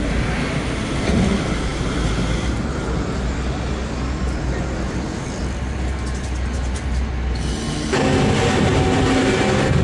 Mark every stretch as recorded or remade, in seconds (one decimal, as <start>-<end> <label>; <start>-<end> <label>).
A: 0.0-9.8 recorded